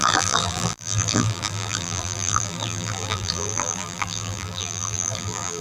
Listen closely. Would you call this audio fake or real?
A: fake